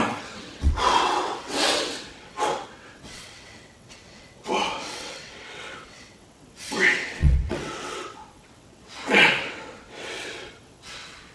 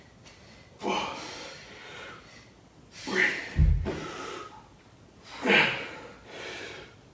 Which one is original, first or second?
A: second